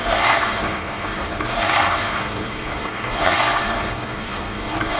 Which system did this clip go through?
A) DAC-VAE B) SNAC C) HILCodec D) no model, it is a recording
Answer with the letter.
B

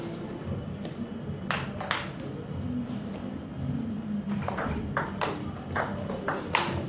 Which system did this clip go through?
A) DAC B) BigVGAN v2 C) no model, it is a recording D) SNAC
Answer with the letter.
C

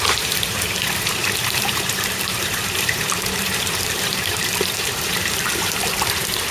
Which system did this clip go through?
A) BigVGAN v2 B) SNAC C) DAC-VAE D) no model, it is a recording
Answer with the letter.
A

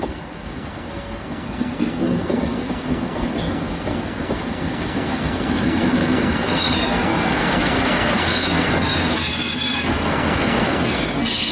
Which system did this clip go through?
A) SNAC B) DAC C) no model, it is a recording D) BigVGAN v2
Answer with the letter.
A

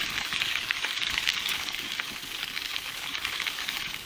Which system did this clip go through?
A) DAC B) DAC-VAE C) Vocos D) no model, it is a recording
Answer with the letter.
A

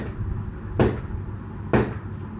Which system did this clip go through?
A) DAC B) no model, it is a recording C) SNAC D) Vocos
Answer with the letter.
B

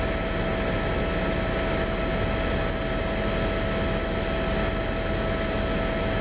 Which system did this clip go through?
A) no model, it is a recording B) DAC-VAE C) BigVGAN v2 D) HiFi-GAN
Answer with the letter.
A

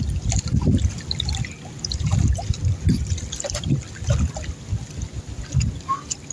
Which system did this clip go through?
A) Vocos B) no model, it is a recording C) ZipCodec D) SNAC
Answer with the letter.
B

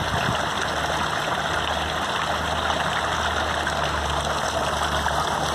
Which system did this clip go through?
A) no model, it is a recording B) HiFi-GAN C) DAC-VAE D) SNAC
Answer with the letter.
A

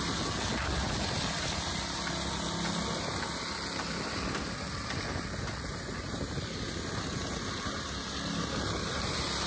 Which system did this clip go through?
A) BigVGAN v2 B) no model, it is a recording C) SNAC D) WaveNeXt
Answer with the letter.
B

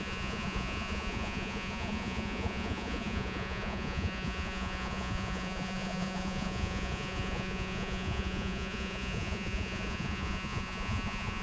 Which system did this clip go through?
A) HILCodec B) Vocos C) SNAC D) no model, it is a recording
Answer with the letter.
B